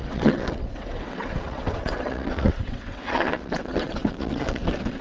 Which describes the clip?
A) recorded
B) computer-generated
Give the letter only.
B